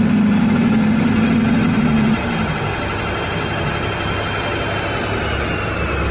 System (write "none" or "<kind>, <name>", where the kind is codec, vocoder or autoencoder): none